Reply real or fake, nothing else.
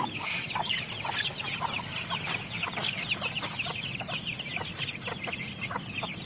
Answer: real